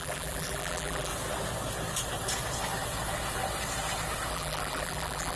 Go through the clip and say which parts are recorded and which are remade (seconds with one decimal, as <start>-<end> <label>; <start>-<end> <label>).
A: 0.0-1.1 remade; 1.1-4.3 recorded; 4.3-5.4 remade